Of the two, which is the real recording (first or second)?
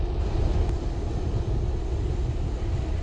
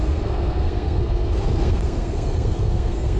first